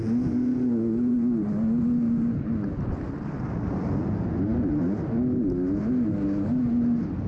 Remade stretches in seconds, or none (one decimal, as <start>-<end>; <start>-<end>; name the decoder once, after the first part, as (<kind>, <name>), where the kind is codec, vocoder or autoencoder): none